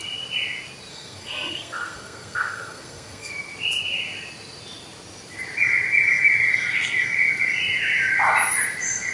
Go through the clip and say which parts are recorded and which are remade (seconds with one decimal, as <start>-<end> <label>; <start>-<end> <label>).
0.0-0.9 recorded; 0.9-3.3 remade; 3.3-9.1 recorded